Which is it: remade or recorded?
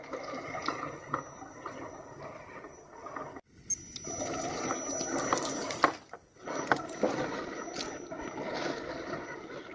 recorded